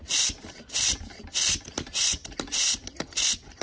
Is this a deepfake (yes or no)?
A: no